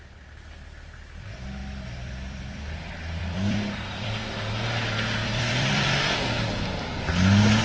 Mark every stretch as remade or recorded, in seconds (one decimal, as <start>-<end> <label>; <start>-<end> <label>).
0.0-1.6 recorded; 1.6-4.3 remade; 4.3-5.2 recorded; 5.2-6.3 remade; 6.3-7.6 recorded

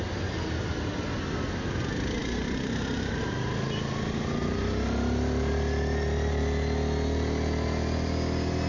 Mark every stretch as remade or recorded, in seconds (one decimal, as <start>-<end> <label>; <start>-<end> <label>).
0.0-2.2 recorded; 2.2-3.4 remade; 3.4-8.7 recorded